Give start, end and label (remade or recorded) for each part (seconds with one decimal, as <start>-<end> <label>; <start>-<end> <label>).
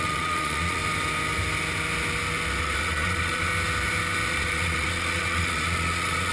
0.0-0.8 remade; 0.8-2.6 recorded; 2.6-3.5 remade; 3.5-4.3 recorded; 4.3-6.3 remade